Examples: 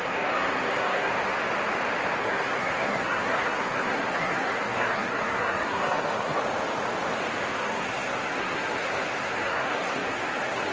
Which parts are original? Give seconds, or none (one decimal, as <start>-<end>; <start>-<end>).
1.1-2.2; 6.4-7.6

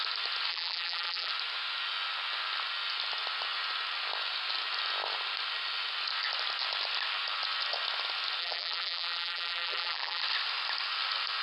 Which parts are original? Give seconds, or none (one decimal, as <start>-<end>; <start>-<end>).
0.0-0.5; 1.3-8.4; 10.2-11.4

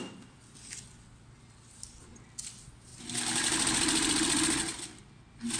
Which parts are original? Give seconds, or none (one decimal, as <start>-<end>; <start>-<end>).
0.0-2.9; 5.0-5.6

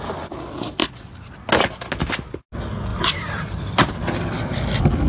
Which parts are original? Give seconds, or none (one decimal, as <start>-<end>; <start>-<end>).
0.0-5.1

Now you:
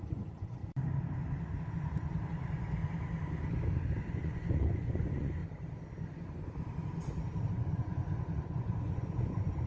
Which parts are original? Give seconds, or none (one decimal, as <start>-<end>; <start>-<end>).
0.6-1.7; 2.8-4.1; 5.4-7.5

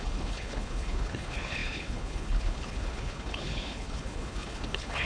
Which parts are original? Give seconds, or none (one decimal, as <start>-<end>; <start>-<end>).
none

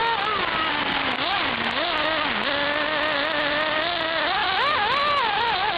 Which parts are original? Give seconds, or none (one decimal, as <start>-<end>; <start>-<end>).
0.0-5.8

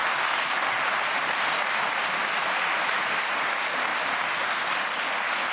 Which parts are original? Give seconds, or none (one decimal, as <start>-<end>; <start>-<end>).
0.0-5.5